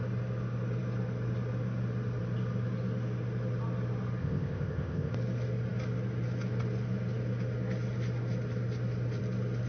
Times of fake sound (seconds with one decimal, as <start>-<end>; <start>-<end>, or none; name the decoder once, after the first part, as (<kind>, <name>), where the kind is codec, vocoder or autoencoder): 4.2-5.1 (codec, ZipCodec)